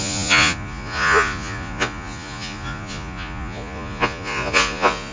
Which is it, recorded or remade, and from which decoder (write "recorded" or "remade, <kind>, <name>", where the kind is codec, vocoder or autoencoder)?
remade, vocoder, Vocos